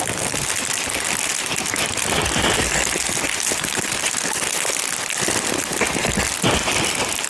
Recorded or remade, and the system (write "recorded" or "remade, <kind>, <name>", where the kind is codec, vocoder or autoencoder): recorded